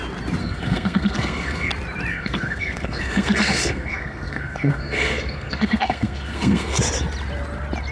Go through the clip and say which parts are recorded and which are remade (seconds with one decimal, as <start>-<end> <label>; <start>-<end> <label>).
0.0-0.4 recorded; 0.4-1.7 remade; 1.7-2.1 recorded; 2.1-6.8 remade; 6.8-7.9 recorded